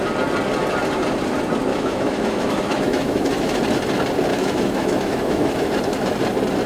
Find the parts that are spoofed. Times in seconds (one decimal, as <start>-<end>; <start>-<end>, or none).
1.7-3.6; 4.3-5.7

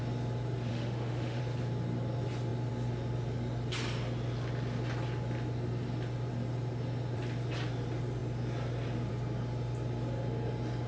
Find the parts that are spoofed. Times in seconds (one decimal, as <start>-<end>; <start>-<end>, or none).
0.7-1.4

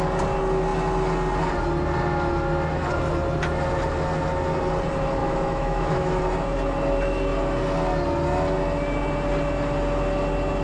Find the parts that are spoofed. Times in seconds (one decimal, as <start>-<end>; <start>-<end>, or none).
5.2-6.2

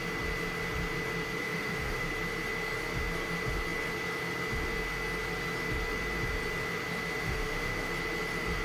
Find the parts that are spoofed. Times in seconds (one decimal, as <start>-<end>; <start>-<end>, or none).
1.3-2.1; 7.2-7.9

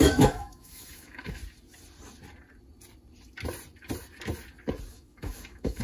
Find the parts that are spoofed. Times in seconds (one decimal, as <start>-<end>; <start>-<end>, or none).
0.0-1.4; 4.9-5.8